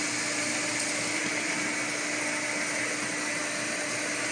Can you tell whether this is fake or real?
real